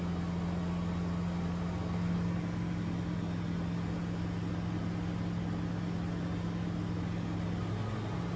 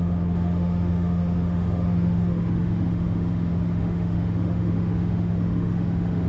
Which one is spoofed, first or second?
second